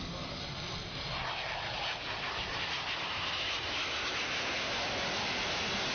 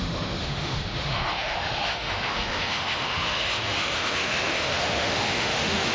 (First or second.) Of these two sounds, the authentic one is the first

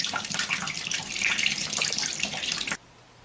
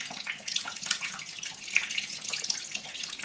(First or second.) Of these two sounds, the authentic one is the first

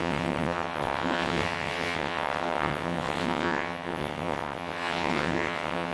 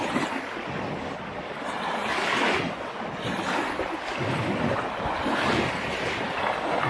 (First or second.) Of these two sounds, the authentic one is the second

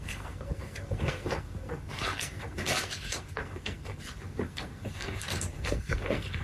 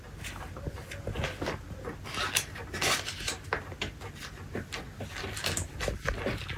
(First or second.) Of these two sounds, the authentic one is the second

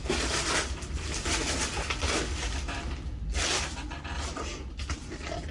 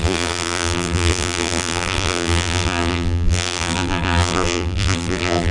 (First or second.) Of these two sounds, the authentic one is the first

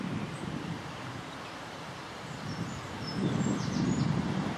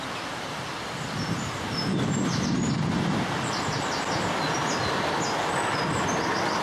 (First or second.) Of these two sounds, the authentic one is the second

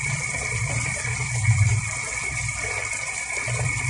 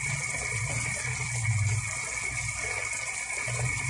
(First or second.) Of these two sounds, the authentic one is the second